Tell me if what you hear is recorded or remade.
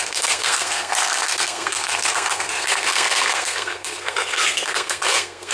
remade